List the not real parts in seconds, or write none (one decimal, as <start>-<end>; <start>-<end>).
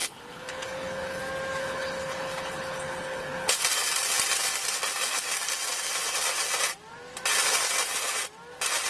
0.0-1.2; 1.6-3.5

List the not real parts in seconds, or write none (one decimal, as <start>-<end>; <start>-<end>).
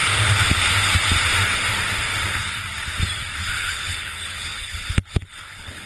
3.5-5.9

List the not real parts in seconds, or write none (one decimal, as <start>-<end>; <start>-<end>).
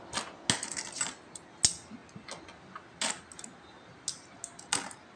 none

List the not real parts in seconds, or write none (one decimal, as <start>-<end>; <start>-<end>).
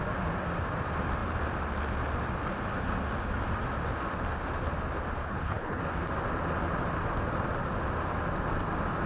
5.2-5.8